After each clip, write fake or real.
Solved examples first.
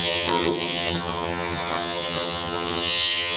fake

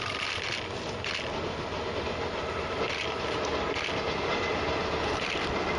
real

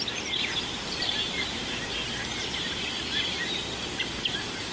real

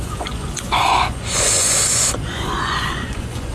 fake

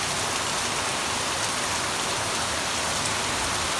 real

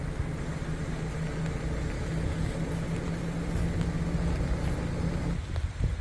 real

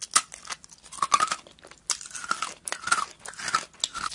real